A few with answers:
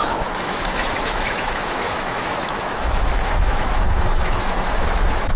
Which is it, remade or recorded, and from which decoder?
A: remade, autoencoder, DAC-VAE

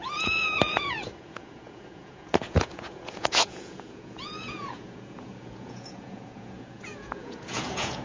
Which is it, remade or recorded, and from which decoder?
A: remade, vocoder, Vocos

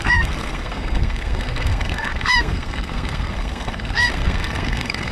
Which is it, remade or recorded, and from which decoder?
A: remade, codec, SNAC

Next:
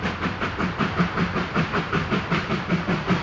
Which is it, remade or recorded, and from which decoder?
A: recorded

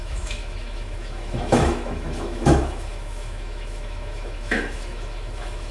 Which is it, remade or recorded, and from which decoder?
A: remade, autoencoder, DAC-VAE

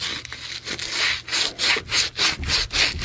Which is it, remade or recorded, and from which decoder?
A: recorded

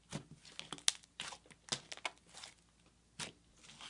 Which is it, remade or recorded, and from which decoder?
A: recorded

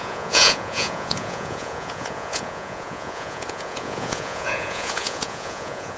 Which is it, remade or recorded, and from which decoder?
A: remade, vocoder, Vocos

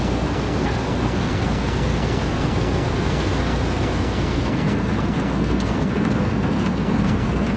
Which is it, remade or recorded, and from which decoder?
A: remade, codec, SNAC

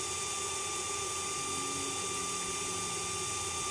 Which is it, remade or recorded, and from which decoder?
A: recorded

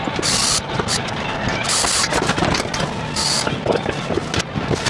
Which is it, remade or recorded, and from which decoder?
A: recorded